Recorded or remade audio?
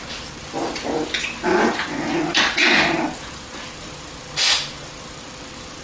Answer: recorded